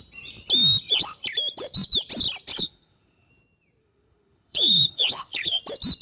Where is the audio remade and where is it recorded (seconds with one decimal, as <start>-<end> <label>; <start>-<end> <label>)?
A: 0.0-2.5 recorded; 2.5-3.3 remade; 3.3-3.8 recorded; 3.8-5.6 remade; 5.6-6.0 recorded